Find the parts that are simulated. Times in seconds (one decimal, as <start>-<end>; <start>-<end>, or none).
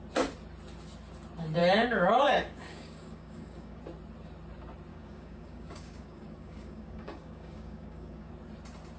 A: 1.6-3.8; 4.9-8.3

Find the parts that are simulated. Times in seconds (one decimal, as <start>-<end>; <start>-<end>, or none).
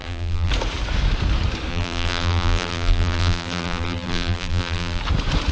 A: 0.0-0.5; 1.7-5.0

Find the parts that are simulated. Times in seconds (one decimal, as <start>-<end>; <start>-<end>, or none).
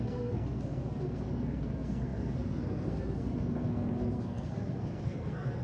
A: 0.0-5.6